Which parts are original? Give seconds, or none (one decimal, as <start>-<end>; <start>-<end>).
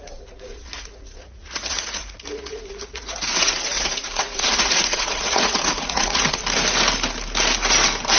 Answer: 6.4-8.2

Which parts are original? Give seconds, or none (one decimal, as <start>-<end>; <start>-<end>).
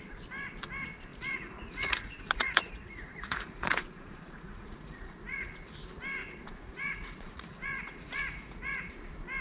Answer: 0.0-1.1; 5.7-6.2; 8.9-9.4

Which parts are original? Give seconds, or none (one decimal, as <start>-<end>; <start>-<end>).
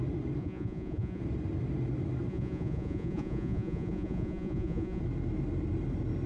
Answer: 0.0-0.4; 1.2-2.3; 5.0-6.3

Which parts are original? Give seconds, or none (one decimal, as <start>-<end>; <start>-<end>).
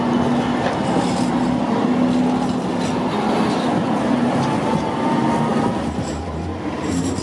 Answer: 0.0-7.2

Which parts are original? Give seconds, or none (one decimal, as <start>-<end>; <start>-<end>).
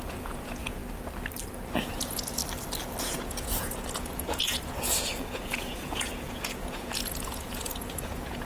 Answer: 0.8-1.8; 2.4-3.0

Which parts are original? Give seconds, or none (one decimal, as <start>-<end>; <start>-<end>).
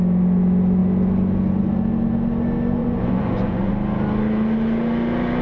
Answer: 0.0-2.8; 3.7-5.4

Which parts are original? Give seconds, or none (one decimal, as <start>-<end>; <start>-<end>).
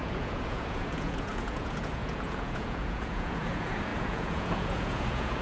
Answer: none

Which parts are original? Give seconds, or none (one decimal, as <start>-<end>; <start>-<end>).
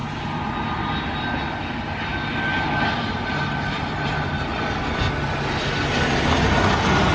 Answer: 0.0-7.1